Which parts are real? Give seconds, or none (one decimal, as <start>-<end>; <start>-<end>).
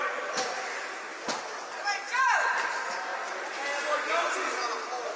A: 0.0-5.2